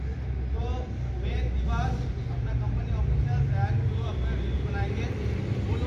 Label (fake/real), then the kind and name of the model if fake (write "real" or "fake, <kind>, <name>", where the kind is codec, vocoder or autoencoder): real